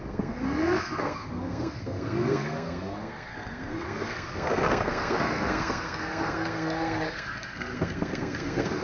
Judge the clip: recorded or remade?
remade